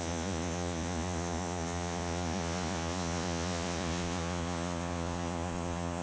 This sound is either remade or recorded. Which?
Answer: remade